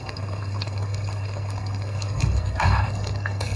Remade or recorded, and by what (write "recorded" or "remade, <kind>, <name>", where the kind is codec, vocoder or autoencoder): remade, codec, SNAC